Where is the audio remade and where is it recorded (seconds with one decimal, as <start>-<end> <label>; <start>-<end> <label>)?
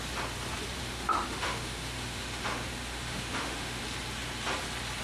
0.0-0.8 recorded; 0.8-3.8 remade; 3.8-5.0 recorded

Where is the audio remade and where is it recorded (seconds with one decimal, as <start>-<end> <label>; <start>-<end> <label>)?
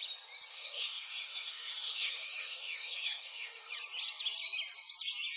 0.0-0.5 recorded; 0.5-3.7 remade; 3.7-5.4 recorded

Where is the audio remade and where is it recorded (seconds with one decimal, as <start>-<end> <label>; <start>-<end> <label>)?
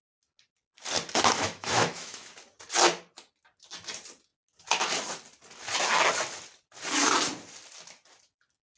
0.0-1.3 recorded; 1.3-2.3 remade; 2.3-8.8 recorded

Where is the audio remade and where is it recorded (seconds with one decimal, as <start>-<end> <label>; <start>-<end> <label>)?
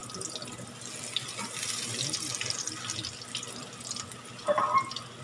0.0-5.2 recorded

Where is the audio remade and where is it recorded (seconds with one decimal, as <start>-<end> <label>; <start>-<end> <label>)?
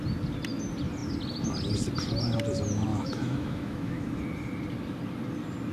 0.0-2.9 recorded; 2.9-4.2 remade; 4.2-5.7 recorded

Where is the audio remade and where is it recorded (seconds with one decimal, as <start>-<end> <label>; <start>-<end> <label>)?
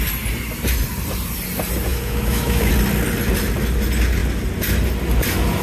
0.0-1.9 recorded; 1.9-2.7 remade; 2.7-5.6 recorded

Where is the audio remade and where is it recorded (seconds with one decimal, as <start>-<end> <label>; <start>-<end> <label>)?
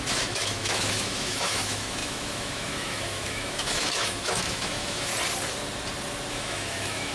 0.0-5.1 remade; 5.1-6.3 recorded; 6.3-7.1 remade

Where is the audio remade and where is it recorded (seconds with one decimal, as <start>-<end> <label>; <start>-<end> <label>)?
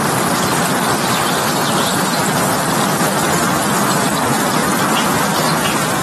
0.0-6.0 recorded